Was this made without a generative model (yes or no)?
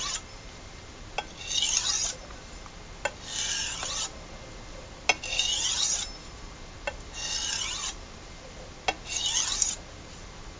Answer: yes